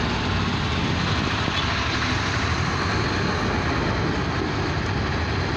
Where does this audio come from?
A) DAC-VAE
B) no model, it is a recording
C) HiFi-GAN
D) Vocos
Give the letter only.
B